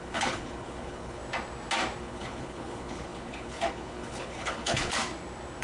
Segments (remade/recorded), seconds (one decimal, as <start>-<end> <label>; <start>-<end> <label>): 0.0-1.2 remade; 1.2-2.0 recorded; 2.0-5.0 remade; 5.0-5.6 recorded